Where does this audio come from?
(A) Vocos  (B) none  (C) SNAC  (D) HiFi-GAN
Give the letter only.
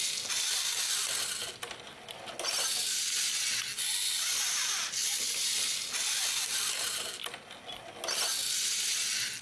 B